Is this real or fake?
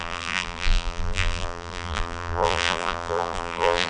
fake